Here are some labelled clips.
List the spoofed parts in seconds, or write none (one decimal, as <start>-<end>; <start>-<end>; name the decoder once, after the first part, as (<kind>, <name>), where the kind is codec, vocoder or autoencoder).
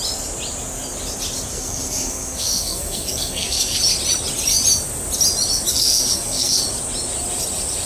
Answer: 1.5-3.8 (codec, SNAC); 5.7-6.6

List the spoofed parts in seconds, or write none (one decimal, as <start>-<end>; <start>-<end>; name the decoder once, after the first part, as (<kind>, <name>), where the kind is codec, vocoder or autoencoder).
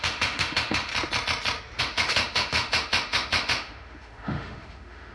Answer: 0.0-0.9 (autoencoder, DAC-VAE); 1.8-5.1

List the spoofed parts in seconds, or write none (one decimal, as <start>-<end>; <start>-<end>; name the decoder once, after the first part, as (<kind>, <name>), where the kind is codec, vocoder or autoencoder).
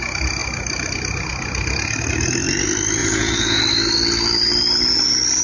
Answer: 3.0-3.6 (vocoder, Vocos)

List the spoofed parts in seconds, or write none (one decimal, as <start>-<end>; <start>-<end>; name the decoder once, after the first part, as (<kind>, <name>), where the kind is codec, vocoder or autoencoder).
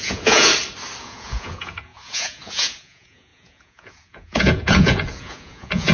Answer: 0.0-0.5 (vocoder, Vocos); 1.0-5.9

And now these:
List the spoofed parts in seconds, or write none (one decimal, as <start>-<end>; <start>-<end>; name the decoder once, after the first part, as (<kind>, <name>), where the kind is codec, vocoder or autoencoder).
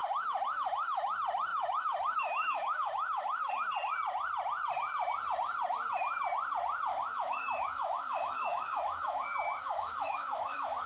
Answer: 0.0-1.1 (autoencoder, DAC-VAE); 1.5-3.5; 6.9-10.9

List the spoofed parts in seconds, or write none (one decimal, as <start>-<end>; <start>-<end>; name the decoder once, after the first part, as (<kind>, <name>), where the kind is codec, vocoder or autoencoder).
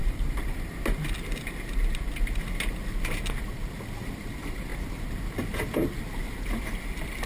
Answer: 0.0-0.7 (vocoder, BigVGAN v2)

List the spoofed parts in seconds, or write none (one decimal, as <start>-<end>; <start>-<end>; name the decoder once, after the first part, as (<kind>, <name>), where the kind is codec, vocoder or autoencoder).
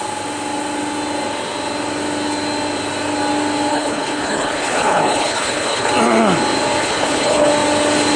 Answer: 3.7-5.9 (codec, HILCodec); 6.8-7.5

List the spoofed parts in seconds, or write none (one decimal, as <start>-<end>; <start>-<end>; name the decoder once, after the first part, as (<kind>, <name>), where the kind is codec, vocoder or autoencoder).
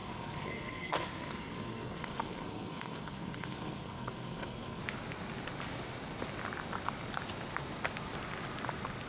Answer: 0.0-4.8 (codec, SNAC)